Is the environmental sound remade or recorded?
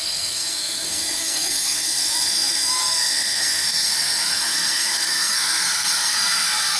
remade